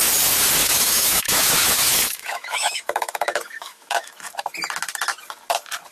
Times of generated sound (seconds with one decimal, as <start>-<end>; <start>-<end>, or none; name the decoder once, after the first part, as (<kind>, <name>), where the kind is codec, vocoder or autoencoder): 0.6-4.1 (autoencoder, DAC-VAE)